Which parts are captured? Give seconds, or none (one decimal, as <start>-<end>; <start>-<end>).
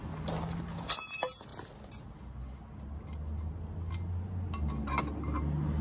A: 0.0-5.8